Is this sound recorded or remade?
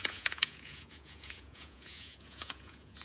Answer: remade